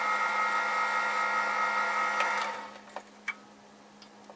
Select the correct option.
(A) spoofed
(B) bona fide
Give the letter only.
B